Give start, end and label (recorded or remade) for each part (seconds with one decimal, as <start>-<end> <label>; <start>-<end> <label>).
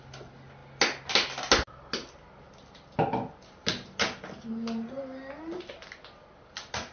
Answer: 0.0-6.9 recorded